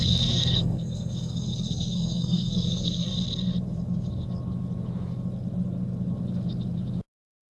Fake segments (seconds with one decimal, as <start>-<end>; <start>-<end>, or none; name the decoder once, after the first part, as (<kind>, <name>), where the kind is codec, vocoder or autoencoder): 0.0-3.1 (codec, SNAC)